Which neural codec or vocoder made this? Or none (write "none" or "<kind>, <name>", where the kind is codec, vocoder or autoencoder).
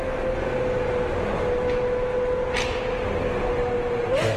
none